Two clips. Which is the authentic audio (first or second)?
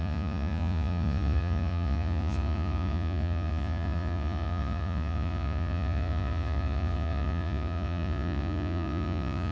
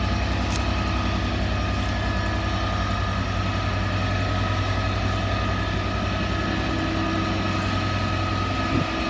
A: second